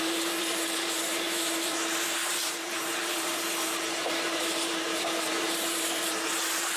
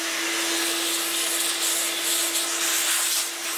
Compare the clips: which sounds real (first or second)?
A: second